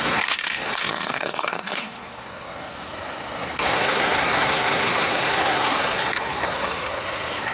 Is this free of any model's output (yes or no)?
no